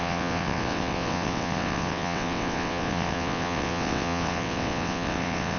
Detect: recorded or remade remade